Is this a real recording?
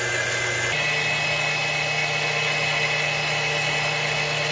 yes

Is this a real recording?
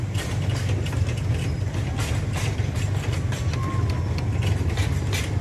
yes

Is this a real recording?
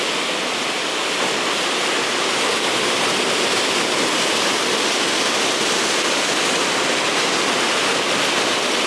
yes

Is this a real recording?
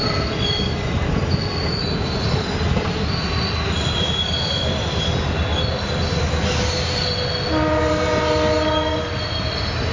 yes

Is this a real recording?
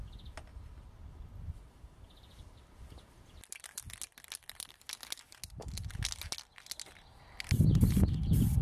yes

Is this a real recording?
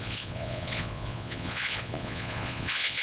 no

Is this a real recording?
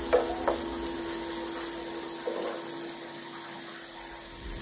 yes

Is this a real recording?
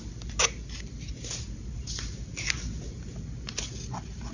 yes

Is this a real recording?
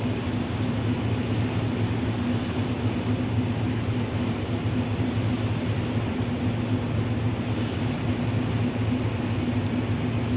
yes